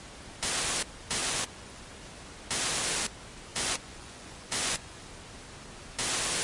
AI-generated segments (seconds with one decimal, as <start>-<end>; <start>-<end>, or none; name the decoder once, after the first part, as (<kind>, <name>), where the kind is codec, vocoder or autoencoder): 1.2-1.8 (vocoder, Vocos); 3.5-5.0